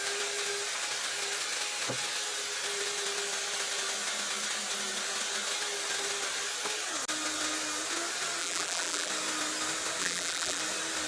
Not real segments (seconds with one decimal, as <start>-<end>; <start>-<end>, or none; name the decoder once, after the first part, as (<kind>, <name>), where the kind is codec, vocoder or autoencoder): 8.4-9.1 (vocoder, BigVGAN v2); 10.0-10.6